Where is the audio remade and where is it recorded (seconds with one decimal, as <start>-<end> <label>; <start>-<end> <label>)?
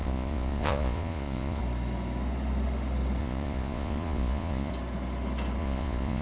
0.0-1.6 remade; 1.6-3.2 recorded; 3.2-4.7 remade; 4.7-5.6 recorded; 5.6-6.2 remade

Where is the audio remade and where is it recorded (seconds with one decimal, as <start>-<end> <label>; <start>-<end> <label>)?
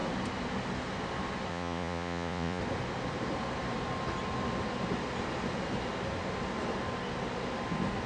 0.0-1.5 recorded; 1.5-2.6 remade; 2.6-8.1 recorded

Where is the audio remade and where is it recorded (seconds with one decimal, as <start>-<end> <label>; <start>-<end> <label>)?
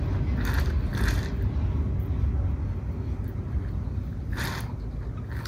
0.0-5.5 recorded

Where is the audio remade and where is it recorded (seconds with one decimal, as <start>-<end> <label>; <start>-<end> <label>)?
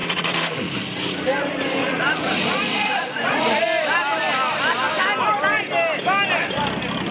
0.0-0.6 remade; 0.6-1.8 recorded; 1.8-3.6 remade; 3.6-7.1 recorded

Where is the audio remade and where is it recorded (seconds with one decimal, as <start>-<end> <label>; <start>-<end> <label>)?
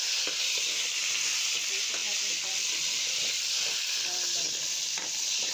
0.0-5.5 recorded